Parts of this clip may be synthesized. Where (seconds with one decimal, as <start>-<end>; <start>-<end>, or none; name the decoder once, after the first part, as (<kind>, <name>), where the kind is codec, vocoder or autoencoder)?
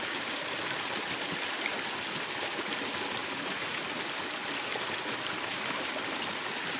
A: 3.2-3.8 (vocoder, Vocos)